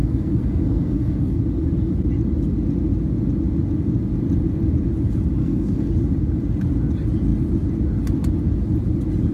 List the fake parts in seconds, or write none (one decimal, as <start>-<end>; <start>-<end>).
0.0-1.4; 5.4-5.9